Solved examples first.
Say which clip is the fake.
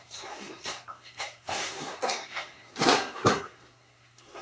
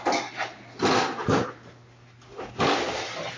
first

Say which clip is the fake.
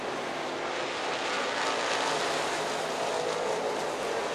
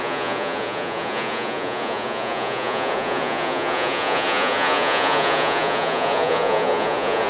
second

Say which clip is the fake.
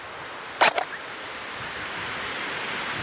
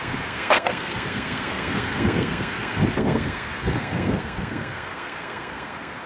second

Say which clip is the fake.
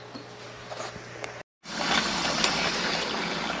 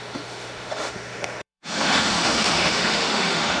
second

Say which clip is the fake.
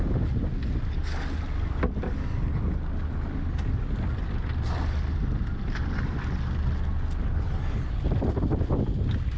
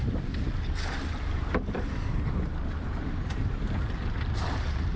second